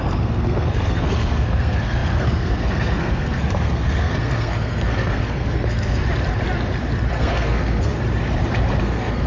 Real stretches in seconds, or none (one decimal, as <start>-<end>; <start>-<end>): 6.0-7.1; 8.0-8.8